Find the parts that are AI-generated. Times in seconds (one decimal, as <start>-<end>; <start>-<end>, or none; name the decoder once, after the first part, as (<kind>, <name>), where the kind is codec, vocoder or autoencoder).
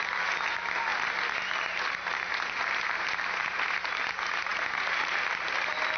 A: none